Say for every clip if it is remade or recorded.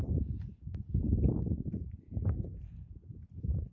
remade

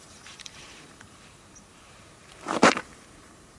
remade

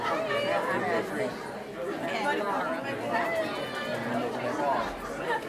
recorded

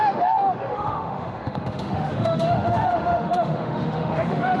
remade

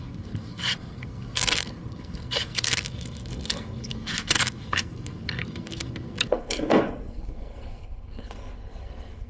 remade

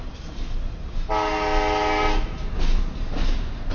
recorded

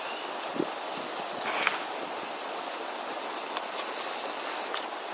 recorded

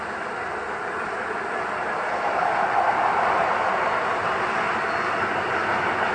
recorded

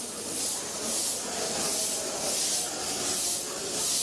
recorded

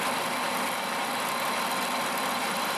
recorded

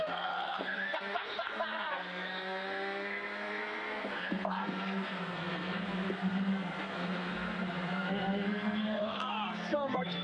remade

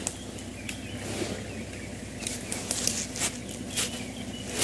recorded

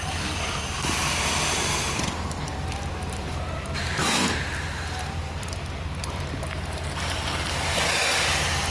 remade